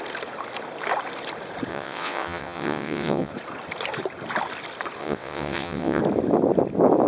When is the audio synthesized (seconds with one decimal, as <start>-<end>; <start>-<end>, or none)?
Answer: 1.7-3.3; 5.0-6.0